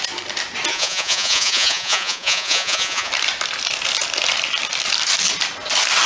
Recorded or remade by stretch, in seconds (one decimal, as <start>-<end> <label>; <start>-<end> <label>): 0.0-0.7 recorded; 0.7-3.1 remade; 3.1-6.1 recorded

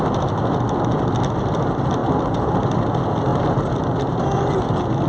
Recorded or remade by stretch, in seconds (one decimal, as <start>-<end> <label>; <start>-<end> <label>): 0.0-5.1 recorded

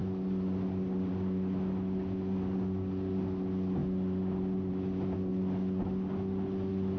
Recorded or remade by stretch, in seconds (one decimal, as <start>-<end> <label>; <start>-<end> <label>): 0.0-7.0 recorded

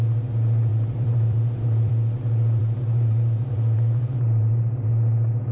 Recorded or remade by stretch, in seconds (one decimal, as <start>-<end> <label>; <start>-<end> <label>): 0.0-0.7 recorded; 0.7-1.9 remade; 1.9-2.6 recorded; 2.6-4.9 remade; 4.9-5.5 recorded